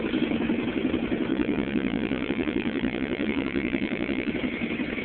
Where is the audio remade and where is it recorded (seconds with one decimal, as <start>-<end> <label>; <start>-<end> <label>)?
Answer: 0.0-1.3 recorded; 1.3-4.3 remade; 4.3-5.0 recorded

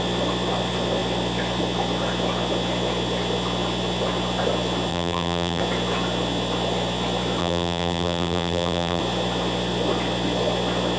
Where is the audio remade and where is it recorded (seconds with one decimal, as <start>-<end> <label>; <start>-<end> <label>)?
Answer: 0.0-4.9 recorded; 4.9-5.6 remade; 5.6-7.4 recorded; 7.4-9.0 remade; 9.0-11.0 recorded